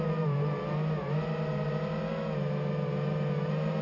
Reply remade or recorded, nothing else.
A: remade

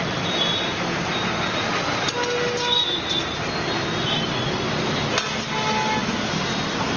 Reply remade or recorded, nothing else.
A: recorded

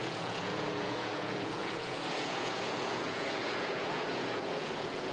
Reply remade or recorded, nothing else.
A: remade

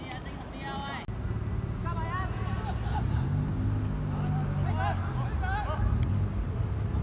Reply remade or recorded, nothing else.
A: recorded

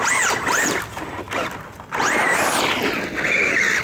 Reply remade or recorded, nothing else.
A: recorded